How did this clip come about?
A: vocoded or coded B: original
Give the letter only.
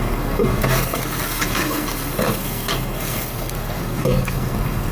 A